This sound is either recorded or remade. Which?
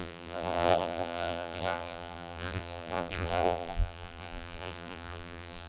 remade